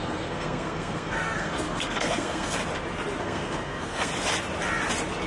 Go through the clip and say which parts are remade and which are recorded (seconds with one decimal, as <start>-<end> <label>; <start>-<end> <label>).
0.0-2.6 remade; 2.6-3.2 recorded; 3.2-4.1 remade; 4.1-5.3 recorded